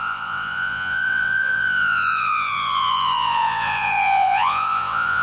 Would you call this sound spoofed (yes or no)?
yes